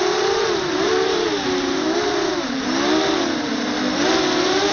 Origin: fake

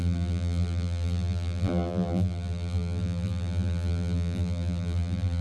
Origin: fake